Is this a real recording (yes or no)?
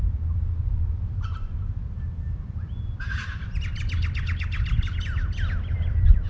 yes